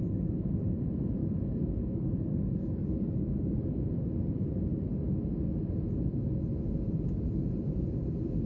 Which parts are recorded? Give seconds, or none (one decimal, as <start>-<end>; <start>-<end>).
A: 0.0-1.2; 3.8-8.5